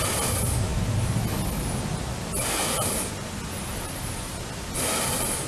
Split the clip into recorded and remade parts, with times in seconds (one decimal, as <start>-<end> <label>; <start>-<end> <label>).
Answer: 0.0-5.5 recorded